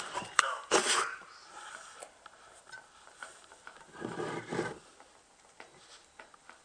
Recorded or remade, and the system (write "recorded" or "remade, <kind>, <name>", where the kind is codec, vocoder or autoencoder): remade, vocoder, BigVGAN v2